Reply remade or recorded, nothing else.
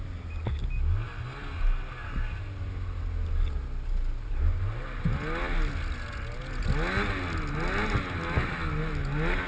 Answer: recorded